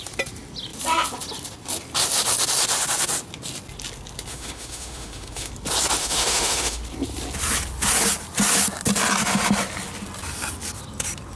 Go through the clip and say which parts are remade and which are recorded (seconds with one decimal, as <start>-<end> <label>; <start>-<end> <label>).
0.0-4.3 recorded; 4.3-5.5 remade; 5.5-6.0 recorded; 6.0-6.8 remade; 6.8-11.4 recorded